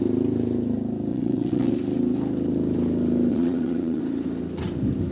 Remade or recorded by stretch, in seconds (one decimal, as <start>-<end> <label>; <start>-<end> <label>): 0.0-1.1 recorded; 1.1-1.7 remade; 1.7-3.3 recorded; 3.3-4.0 remade; 4.0-5.1 recorded